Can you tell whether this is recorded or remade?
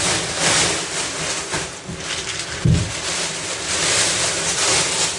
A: recorded